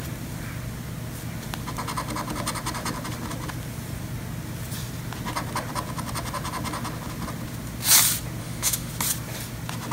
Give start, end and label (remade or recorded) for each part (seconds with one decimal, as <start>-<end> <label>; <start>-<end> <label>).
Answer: 0.0-8.4 recorded; 8.4-8.9 remade; 8.9-9.9 recorded